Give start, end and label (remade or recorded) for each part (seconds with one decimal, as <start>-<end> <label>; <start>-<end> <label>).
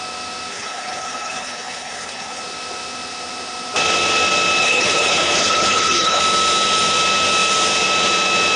0.0-0.5 recorded; 0.5-2.4 remade; 2.4-4.6 recorded; 4.6-6.2 remade; 6.2-8.6 recorded